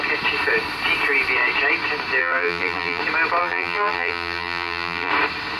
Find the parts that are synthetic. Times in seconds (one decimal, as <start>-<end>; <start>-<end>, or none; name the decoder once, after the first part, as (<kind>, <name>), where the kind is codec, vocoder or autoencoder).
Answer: 2.2-3.0 (vocoder, BigVGAN v2); 3.4-5.1